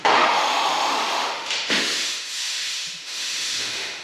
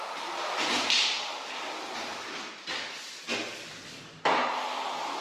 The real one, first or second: second